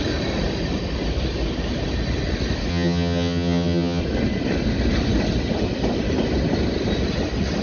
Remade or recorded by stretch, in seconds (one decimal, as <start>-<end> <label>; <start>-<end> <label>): 0.0-2.7 recorded; 2.7-4.0 remade; 4.0-7.6 recorded